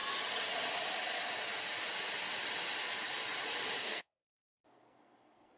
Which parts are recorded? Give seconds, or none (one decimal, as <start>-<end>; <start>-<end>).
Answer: 0.0-3.8